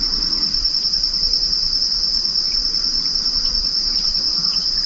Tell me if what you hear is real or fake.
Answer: fake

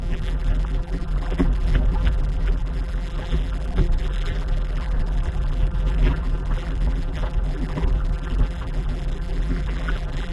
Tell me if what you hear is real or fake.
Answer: fake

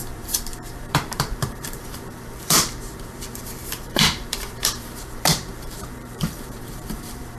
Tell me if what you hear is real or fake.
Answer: fake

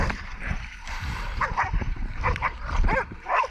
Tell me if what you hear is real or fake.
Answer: fake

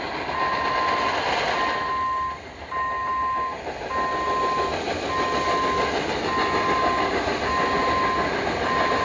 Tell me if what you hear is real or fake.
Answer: real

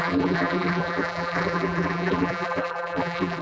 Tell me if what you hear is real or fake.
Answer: fake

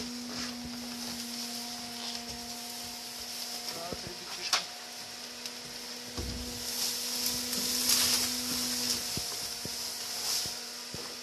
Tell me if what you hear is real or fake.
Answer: real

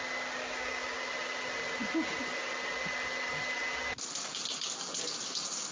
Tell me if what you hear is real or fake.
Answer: real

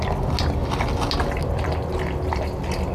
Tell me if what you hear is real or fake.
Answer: real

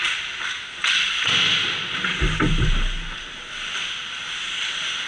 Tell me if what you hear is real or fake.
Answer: real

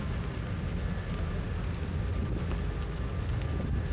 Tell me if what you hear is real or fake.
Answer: fake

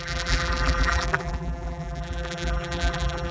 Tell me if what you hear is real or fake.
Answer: fake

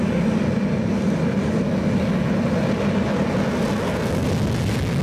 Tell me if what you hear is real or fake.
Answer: real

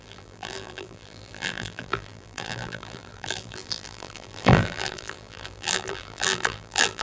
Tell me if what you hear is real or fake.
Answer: fake